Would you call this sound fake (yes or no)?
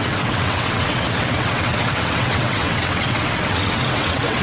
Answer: yes